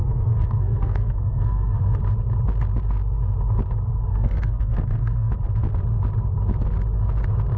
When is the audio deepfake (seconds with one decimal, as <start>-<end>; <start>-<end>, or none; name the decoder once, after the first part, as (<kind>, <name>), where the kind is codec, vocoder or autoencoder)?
0.0-1.8 (codec, SNAC); 4.1-5.3